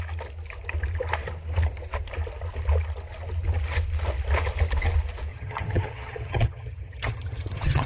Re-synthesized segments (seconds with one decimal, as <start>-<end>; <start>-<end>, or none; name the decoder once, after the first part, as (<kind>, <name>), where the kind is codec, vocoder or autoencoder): 5.3-7.9 (vocoder, HiFi-GAN)